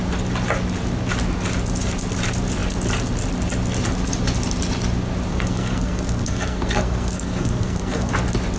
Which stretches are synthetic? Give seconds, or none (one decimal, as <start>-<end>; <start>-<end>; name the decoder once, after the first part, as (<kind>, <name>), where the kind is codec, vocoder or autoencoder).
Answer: 5.3-8.1 (codec, SNAC)